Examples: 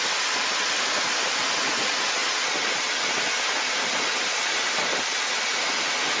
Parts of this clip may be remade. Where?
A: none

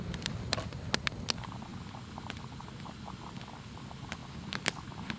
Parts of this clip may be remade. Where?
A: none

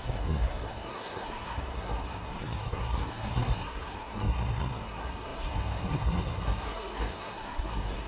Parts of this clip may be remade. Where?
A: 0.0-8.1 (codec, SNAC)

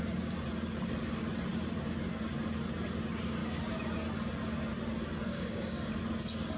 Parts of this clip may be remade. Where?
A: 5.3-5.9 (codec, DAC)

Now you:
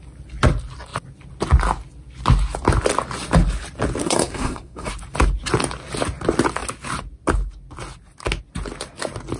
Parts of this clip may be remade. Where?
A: 4.0-4.9 (codec, SNAC)

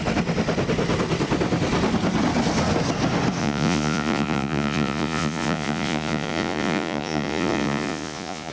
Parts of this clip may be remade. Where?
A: 3.4-8.5 (vocoder, Vocos)

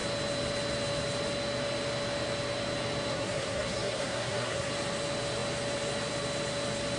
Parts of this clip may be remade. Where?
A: 3.1-4.7 (codec, SNAC)

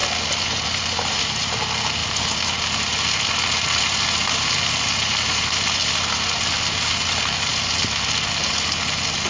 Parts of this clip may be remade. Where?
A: none